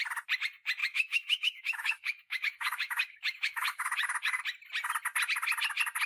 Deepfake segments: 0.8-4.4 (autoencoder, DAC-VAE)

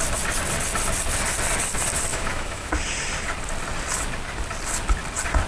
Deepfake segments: 2.1-2.7 (autoencoder, DAC-VAE)

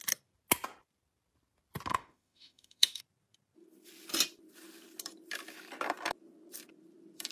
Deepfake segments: 1.9-3.0 (autoencoder, DAC-VAE)

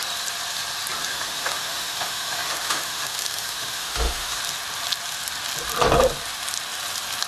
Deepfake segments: 1.1-4.4 (autoencoder, DAC-VAE)

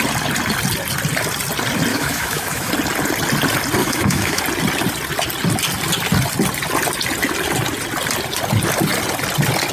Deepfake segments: 1.9-2.7 (autoencoder, DAC-VAE); 3.8-4.4

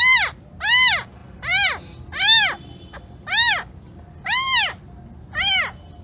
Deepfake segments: none